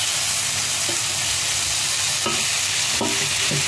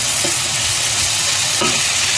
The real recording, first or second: first